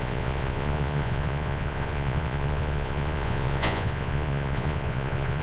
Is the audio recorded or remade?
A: remade